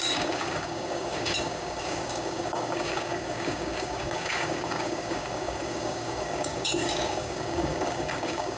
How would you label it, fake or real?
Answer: fake